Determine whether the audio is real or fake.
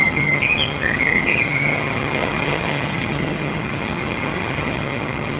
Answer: fake